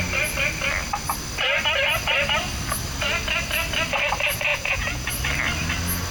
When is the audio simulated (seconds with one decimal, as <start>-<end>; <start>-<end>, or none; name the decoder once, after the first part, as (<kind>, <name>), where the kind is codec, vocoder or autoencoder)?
4.5-5.1 (vocoder, Vocos)